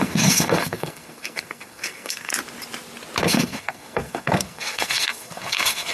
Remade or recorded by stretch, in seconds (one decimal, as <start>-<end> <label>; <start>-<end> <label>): 0.0-2.3 remade; 2.3-3.2 recorded; 3.2-5.9 remade